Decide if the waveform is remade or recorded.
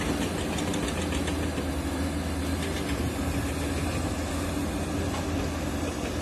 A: recorded